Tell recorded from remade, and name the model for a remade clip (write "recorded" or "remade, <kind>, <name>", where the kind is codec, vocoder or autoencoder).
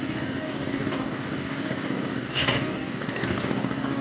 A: remade, codec, DAC